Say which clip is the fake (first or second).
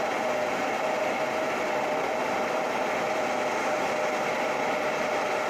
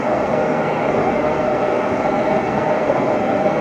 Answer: second